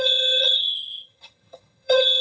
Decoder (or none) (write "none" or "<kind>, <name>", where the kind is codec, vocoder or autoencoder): vocoder, HiFi-GAN